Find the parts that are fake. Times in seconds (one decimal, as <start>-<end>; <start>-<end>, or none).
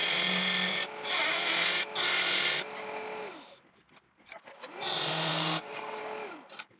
5.3-6.0